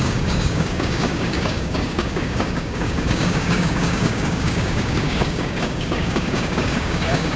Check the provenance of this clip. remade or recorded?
remade